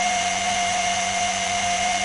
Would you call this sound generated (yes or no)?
yes